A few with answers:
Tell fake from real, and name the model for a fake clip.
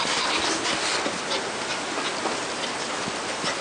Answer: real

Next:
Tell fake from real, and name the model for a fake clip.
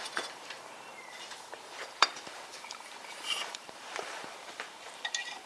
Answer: fake, vocoder, BigVGAN v2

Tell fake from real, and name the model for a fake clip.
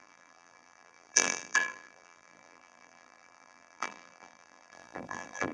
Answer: fake, vocoder, BigVGAN v2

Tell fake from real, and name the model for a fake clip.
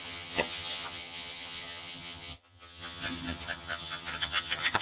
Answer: fake, vocoder, HiFi-GAN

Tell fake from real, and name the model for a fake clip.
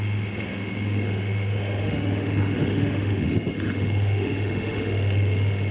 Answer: fake, autoencoder, DAC-VAE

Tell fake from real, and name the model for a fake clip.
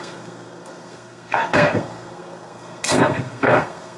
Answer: fake, codec, SNAC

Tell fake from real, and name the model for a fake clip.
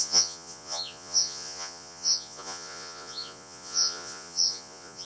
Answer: fake, vocoder, Vocos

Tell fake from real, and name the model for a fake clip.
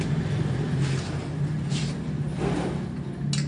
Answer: real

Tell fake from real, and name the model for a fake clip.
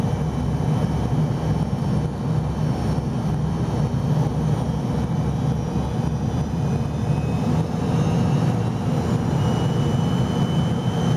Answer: real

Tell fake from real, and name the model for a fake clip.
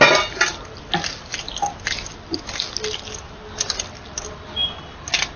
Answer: real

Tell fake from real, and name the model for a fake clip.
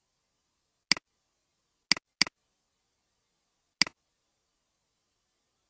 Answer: real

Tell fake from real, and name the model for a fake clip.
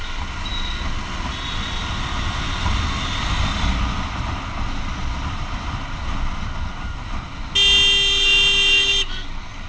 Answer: real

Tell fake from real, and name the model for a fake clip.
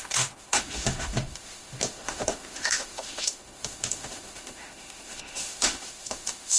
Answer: fake, autoencoder, DAC-VAE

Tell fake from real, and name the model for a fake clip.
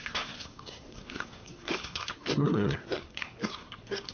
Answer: fake, codec, SNAC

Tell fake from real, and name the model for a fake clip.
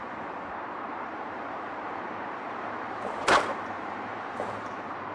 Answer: fake, vocoder, BigVGAN v2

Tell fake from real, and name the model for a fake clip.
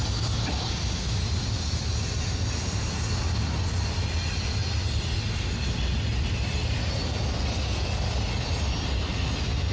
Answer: real